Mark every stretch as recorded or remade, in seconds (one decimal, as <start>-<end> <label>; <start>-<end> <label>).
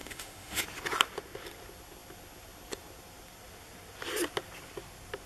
0.0-0.6 remade; 0.6-5.3 recorded